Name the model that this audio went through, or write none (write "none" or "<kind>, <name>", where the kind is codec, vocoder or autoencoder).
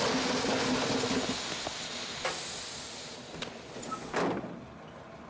none